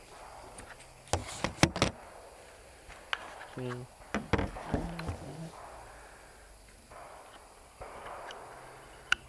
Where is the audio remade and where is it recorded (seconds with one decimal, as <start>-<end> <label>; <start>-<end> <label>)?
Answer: 0.0-9.3 recorded